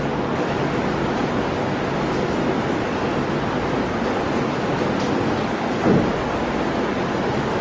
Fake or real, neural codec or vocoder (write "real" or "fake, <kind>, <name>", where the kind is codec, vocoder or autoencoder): real